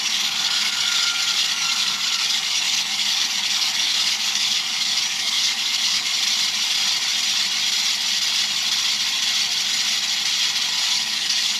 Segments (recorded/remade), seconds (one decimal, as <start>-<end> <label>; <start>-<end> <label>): 0.0-6.1 remade; 6.1-10.8 recorded; 10.8-11.6 remade